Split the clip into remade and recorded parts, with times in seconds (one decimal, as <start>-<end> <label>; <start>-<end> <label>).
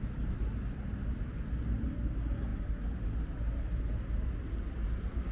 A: 0.0-5.3 recorded